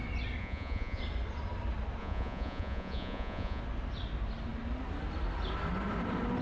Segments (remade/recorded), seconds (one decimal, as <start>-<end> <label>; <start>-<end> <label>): 0.0-0.4 recorded; 0.4-1.0 remade; 1.0-2.0 recorded; 2.0-3.6 remade; 3.6-6.4 recorded